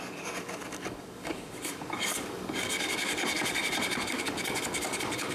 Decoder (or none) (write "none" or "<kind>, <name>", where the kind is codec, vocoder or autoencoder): codec, DAC